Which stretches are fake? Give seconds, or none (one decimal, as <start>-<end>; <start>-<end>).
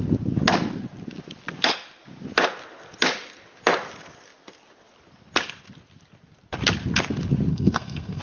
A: 7.5-8.2